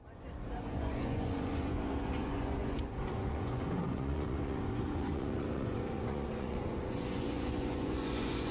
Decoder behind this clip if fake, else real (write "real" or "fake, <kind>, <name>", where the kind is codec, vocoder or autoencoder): fake, vocoder, Vocos